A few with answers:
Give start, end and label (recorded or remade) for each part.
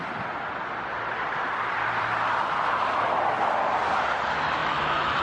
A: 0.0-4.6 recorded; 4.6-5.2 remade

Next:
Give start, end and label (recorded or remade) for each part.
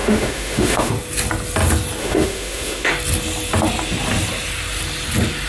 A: 0.0-0.9 remade; 0.9-2.0 recorded; 2.0-2.9 remade; 2.9-5.5 recorded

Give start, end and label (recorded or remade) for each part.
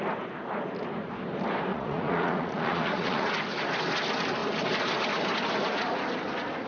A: 0.0-1.7 recorded; 1.7-3.3 remade; 3.3-6.7 recorded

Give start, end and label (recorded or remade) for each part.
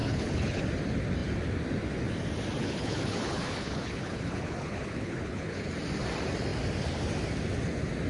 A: 0.0-0.6 remade; 0.6-2.6 recorded; 2.6-5.7 remade; 5.7-8.1 recorded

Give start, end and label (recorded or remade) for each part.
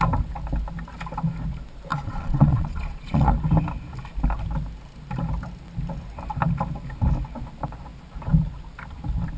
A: 0.0-1.9 recorded; 1.9-3.3 remade; 3.3-9.4 recorded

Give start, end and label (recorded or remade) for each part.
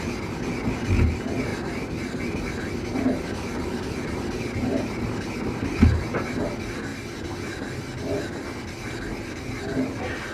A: 0.0-2.9 recorded; 2.9-5.6 remade; 5.6-10.3 recorded